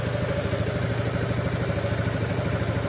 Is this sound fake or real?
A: real